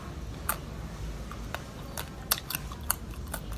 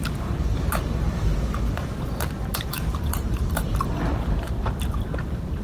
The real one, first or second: first